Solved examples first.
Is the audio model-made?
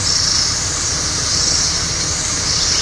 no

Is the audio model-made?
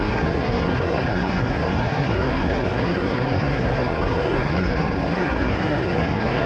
yes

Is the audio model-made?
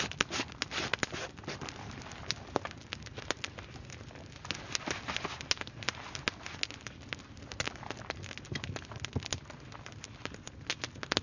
no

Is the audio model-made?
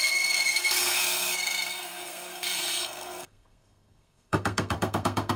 yes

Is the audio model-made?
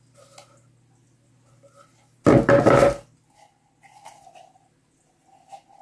no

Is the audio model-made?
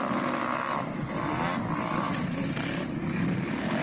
no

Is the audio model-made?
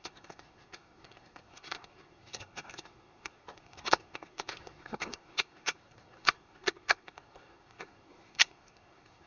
yes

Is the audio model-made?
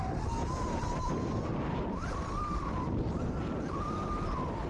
no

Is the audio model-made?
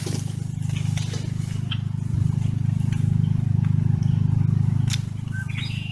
no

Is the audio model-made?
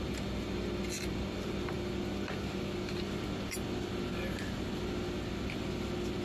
no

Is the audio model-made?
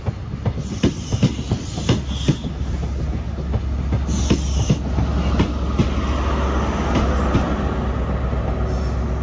no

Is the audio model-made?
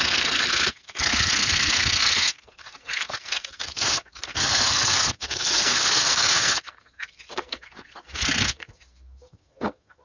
yes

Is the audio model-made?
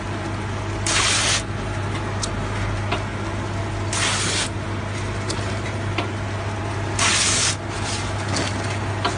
no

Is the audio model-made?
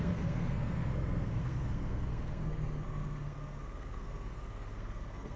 yes